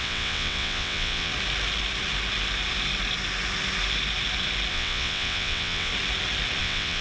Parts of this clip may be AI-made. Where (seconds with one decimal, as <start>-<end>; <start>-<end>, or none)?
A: 0.0-1.3; 4.7-5.9; 6.6-7.0